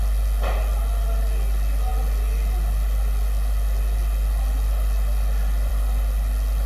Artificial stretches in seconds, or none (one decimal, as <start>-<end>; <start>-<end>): none